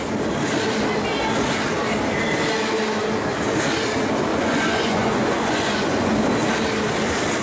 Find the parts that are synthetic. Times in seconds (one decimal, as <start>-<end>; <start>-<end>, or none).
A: 4.3-6.1